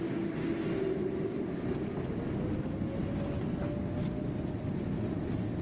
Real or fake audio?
real